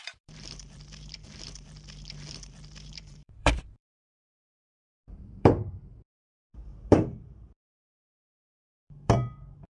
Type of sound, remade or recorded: remade